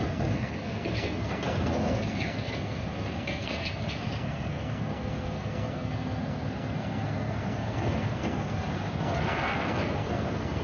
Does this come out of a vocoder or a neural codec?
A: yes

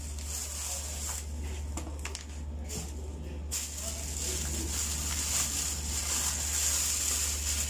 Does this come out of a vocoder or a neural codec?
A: no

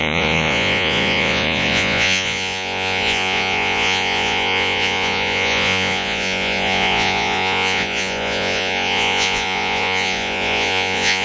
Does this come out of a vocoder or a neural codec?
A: yes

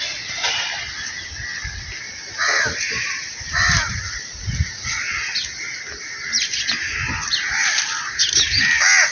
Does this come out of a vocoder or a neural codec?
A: no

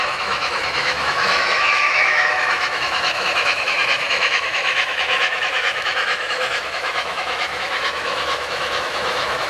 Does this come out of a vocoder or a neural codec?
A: yes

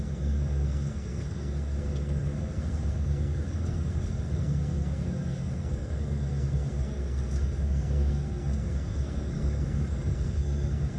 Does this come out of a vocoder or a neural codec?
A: yes